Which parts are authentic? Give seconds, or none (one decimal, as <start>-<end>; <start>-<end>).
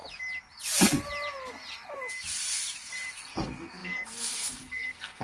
0.0-3.1